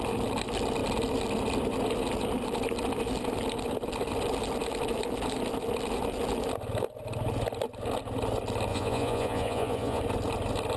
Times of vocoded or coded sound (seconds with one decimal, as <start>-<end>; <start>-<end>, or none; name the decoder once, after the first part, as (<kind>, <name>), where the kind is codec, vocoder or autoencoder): 8.7-10.0 (vocoder, Vocos)